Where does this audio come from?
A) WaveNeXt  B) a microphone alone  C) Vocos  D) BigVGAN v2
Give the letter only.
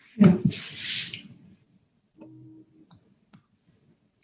D